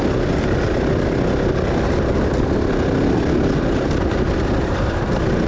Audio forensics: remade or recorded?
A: recorded